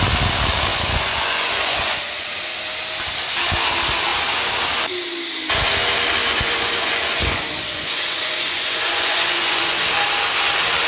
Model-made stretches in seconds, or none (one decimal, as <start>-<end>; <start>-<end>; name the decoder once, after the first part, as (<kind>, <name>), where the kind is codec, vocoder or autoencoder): 0.7-2.3 (vocoder, Vocos); 6.2-9.8